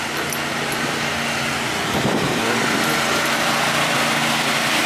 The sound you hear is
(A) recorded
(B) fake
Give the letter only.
A